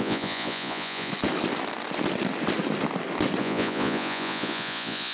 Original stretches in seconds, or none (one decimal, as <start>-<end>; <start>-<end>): 1.1-3.4